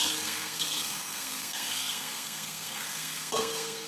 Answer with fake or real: fake